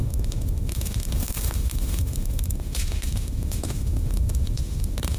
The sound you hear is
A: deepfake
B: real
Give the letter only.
A